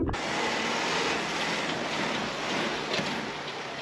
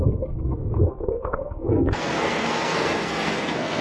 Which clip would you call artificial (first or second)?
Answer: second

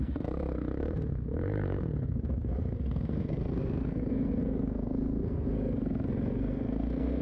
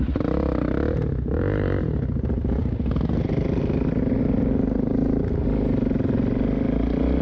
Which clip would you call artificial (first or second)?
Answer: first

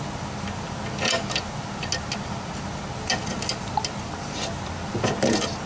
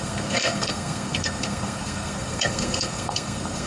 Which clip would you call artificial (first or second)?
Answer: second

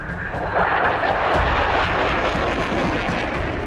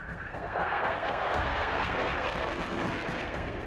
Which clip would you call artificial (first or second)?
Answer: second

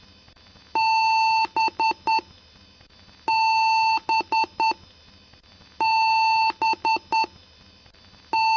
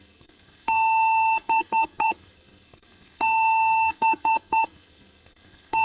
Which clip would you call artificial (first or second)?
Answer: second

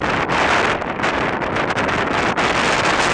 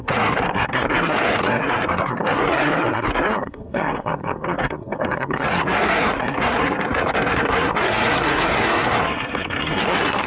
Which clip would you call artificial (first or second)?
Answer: second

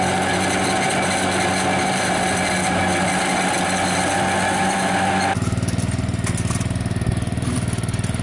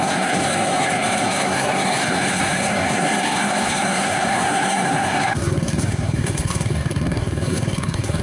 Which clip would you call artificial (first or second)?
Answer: second